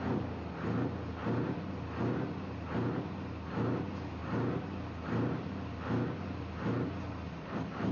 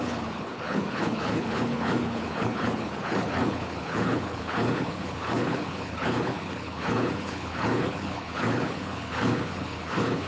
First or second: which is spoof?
second